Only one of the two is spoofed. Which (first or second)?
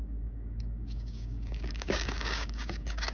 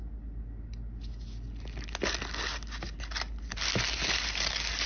first